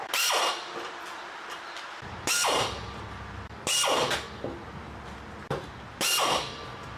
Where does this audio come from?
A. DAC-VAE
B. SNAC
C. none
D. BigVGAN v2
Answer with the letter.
C